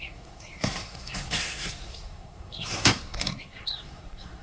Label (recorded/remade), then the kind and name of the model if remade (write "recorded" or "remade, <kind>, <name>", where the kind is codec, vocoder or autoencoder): remade, codec, SNAC